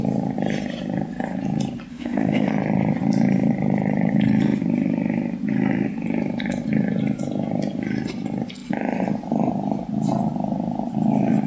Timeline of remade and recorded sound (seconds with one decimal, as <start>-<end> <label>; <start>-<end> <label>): 0.0-1.9 recorded; 1.9-2.5 remade; 2.5-11.5 recorded